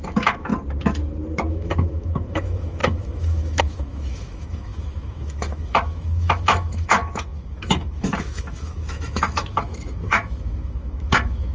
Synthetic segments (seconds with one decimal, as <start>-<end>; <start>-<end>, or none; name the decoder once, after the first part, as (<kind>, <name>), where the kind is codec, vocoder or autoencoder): 0.0-0.5 (autoencoder, DAC-VAE); 1.5-11.5